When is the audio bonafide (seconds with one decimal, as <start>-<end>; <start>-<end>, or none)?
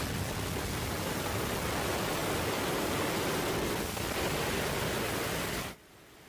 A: 0.0-6.3